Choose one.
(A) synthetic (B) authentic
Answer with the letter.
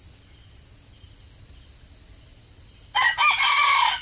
B